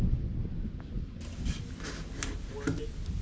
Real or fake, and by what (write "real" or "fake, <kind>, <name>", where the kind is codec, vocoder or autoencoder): real